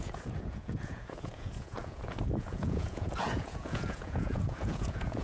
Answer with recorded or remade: remade